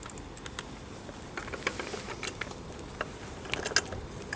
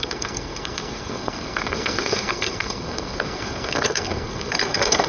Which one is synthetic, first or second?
second